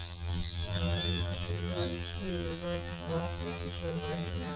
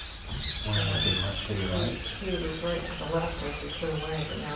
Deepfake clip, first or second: first